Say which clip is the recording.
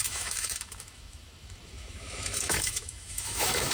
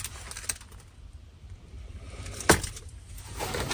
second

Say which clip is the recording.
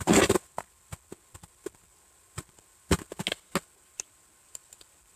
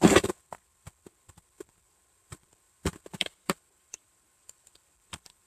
first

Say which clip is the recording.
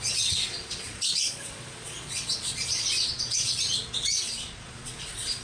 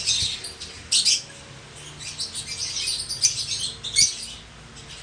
second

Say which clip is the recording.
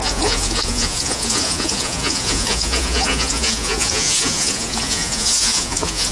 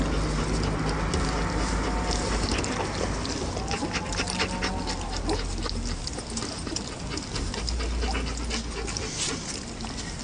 second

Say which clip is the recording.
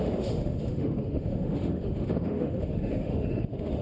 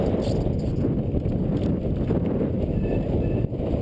second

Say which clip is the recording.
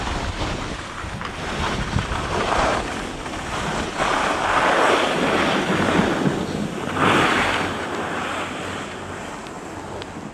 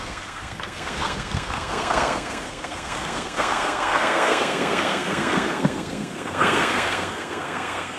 first